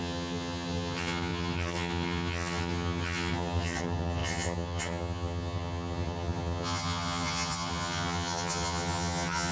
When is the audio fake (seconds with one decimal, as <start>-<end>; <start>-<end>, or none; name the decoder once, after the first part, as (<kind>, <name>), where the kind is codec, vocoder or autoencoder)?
0.0-9.5 (vocoder, HiFi-GAN)

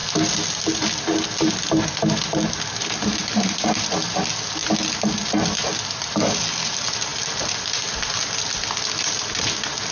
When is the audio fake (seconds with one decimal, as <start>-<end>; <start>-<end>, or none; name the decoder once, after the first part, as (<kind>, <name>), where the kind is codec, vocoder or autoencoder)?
none

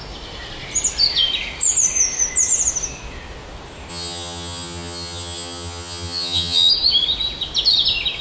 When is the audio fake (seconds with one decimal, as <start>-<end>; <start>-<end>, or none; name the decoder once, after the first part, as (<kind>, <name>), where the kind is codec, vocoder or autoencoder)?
3.9-6.7 (vocoder, HiFi-GAN)

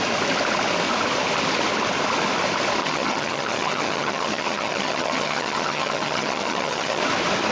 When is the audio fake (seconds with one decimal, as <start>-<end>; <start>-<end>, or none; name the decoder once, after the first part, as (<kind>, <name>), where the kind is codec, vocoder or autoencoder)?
2.8-7.0 (vocoder, HiFi-GAN)

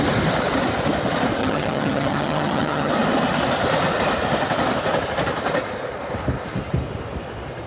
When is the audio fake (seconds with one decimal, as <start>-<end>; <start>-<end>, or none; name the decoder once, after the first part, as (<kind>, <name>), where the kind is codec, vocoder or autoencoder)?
1.4-2.9 (vocoder, HiFi-GAN)